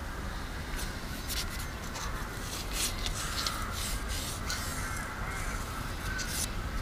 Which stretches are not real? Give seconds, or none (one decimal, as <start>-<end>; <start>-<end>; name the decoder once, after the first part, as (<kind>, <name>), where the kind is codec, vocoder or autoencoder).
none